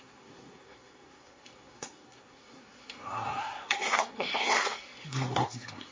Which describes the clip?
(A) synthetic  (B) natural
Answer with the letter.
A